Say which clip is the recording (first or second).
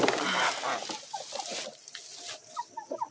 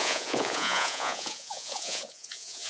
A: first